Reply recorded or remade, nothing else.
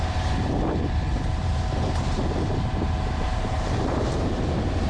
remade